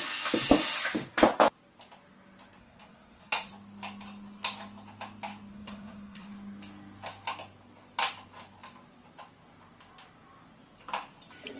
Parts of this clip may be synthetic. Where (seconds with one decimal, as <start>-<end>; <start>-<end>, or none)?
2.6-3.5; 5.5-6.3